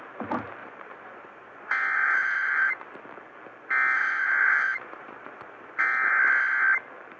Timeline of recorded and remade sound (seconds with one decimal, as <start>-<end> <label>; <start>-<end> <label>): 0.0-0.6 recorded; 0.6-2.9 remade; 2.9-4.0 recorded; 4.0-6.1 remade; 6.1-7.2 recorded